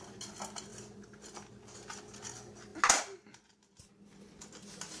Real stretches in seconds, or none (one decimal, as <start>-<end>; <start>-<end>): 0.0-5.0